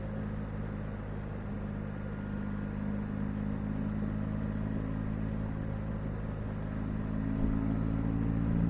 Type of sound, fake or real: real